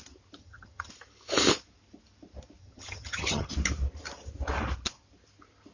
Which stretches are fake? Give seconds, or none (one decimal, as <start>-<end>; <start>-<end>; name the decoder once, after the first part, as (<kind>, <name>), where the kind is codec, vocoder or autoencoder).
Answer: 0.4-0.9 (vocoder, HiFi-GAN); 2.6-3.5